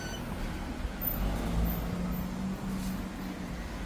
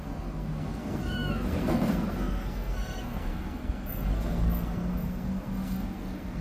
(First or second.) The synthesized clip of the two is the second